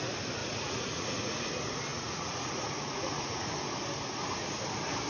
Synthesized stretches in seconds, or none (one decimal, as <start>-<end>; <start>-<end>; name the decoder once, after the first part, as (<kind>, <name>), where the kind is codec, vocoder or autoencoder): 0.4-1.5 (vocoder, Vocos); 1.9-3.5